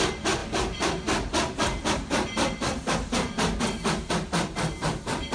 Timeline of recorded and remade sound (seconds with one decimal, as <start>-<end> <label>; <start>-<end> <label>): 0.0-5.3 recorded